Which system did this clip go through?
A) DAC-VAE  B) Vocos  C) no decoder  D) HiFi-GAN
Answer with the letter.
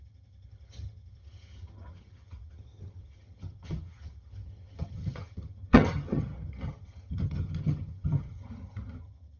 D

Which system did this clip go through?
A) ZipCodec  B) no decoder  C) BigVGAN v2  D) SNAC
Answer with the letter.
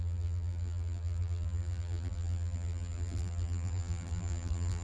C